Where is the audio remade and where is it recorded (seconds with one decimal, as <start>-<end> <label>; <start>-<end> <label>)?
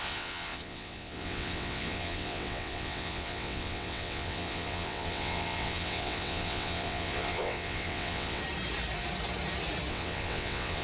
0.0-8.4 remade; 8.4-9.9 recorded; 9.9-10.8 remade